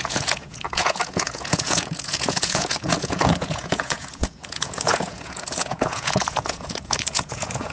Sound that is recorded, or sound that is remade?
remade